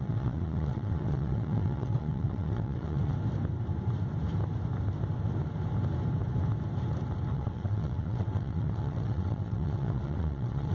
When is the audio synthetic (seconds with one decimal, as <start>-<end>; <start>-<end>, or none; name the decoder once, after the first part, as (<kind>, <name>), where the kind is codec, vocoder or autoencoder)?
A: 0.0-3.1 (vocoder, WaveNeXt); 7.3-10.7